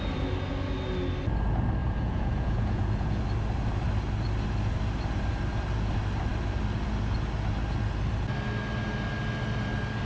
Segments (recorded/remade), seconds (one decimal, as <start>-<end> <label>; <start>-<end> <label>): 0.0-1.8 recorded; 1.8-3.2 remade; 3.2-10.1 recorded